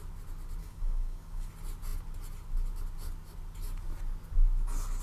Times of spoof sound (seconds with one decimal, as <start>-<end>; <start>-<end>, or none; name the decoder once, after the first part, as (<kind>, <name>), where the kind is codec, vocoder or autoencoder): 0.6-1.5 (codec, DAC)